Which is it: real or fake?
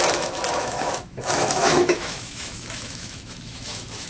fake